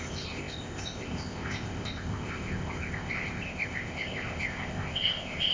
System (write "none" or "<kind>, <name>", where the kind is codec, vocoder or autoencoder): codec, ZipCodec